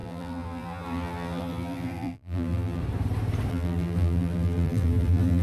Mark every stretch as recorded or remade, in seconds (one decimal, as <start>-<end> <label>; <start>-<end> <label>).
0.0-2.8 remade; 2.8-3.5 recorded; 3.5-5.4 remade